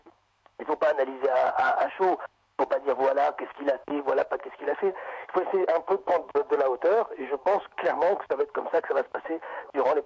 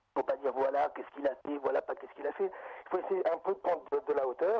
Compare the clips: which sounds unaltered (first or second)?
second